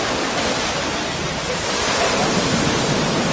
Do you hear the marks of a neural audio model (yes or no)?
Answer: no